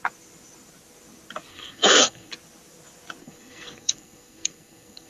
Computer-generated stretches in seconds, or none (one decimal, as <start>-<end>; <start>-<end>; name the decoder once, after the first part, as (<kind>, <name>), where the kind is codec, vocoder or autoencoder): 1.5-2.3 (codec, SNAC); 3.2-5.1